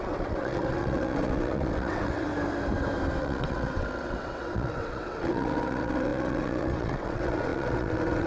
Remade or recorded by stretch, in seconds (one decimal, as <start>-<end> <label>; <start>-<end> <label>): 0.0-2.3 remade; 2.3-3.2 recorded; 3.2-8.3 remade